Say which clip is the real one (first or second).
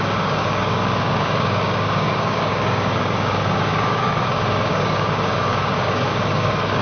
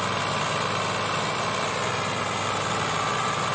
second